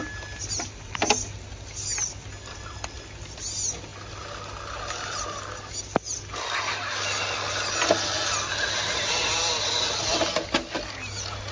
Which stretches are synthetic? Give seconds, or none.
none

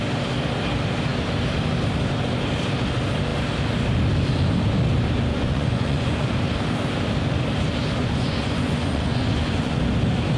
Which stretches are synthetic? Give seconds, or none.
5.3-6.3 (vocoder, Vocos); 8.0-9.8